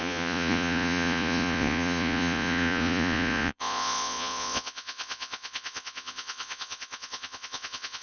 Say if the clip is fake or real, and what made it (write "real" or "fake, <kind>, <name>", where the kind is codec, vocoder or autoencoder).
fake, vocoder, Vocos